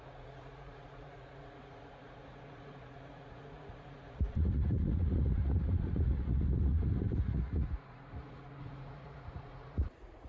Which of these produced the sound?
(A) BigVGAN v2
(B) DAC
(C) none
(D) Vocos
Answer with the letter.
D